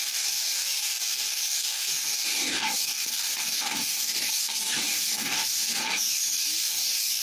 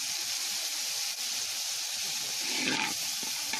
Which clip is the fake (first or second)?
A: first